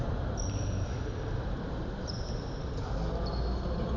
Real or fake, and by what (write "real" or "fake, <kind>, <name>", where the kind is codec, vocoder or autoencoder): real